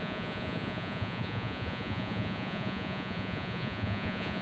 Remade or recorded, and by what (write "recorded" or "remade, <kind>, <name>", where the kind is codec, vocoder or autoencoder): remade, vocoder, Vocos